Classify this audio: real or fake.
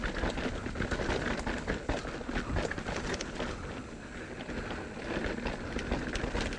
real